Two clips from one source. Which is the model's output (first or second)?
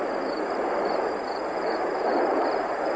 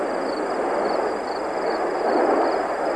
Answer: first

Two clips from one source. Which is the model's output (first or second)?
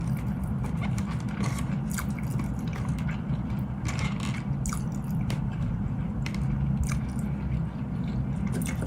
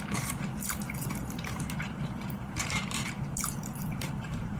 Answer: second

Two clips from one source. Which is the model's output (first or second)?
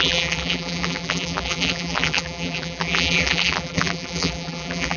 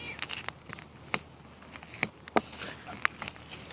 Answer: first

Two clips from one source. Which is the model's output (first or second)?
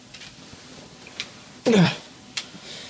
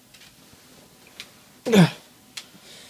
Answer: first